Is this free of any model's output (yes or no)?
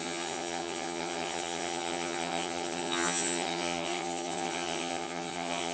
no